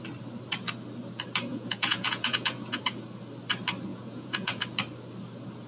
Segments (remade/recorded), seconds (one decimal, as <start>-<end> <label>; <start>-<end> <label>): 0.0-1.5 recorded; 1.5-2.8 remade; 2.8-3.9 recorded; 3.9-4.6 remade; 4.6-5.7 recorded